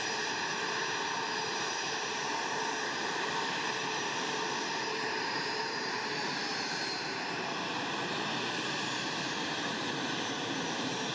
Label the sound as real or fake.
fake